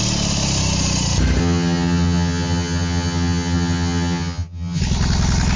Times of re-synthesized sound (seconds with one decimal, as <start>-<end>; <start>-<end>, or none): 1.4-4.8